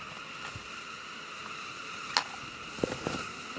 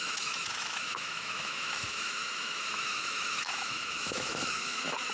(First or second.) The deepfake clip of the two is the second